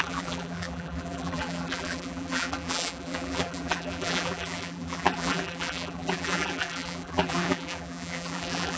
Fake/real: fake